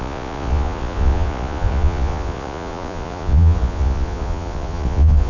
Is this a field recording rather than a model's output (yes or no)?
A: no